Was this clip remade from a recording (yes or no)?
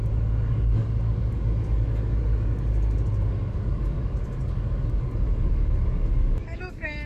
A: yes